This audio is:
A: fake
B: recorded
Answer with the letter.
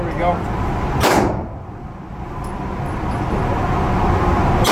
B